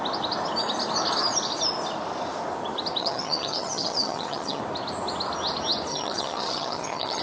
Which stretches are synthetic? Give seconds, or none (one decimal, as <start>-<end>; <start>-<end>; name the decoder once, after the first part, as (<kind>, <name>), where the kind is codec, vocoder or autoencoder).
3.0-4.6 (vocoder, HiFi-GAN); 5.9-7.2